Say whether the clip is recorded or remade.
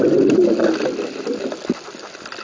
recorded